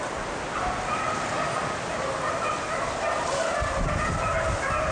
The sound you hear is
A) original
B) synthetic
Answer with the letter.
A